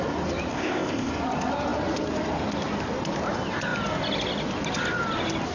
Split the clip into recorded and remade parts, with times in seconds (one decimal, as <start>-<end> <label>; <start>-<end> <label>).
0.0-0.5 recorded; 0.5-1.1 remade; 1.1-5.5 recorded

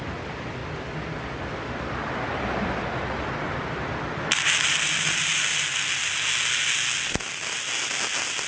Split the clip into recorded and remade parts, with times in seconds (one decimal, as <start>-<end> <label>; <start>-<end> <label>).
0.0-8.5 recorded

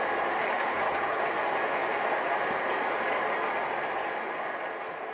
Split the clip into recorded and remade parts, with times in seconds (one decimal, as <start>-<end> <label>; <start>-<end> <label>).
0.0-0.4 recorded; 0.4-1.2 remade; 1.2-5.1 recorded

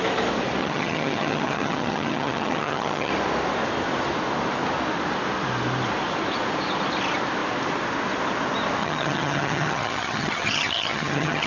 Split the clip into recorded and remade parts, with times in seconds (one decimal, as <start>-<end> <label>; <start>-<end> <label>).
0.0-0.6 recorded; 0.6-3.1 remade; 3.1-8.8 recorded; 8.8-11.5 remade

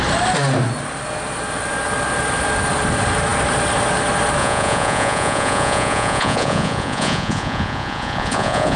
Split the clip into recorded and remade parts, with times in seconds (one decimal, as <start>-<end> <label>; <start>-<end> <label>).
0.0-4.4 recorded; 4.4-8.8 remade